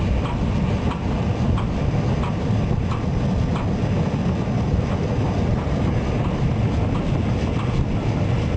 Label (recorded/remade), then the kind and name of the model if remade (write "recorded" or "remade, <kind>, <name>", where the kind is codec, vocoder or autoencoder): recorded